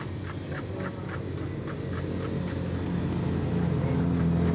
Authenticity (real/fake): real